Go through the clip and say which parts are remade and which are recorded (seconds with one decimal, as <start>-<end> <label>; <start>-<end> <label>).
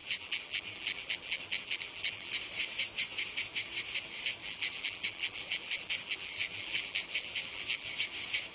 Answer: 0.0-2.3 remade; 2.3-4.4 recorded; 4.4-7.9 remade; 7.9-8.5 recorded